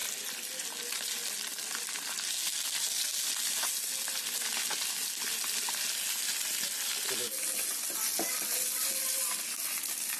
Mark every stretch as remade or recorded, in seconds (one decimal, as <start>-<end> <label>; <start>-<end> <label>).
0.0-10.2 recorded